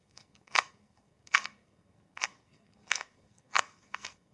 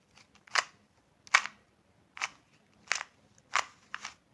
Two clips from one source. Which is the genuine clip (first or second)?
second